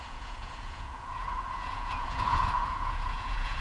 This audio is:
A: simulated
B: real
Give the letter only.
A